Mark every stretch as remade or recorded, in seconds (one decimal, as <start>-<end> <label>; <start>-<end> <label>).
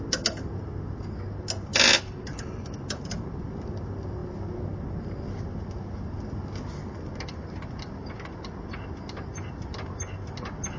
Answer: 0.0-10.8 recorded